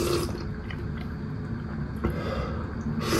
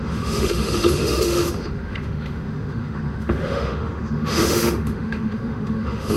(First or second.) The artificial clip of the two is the second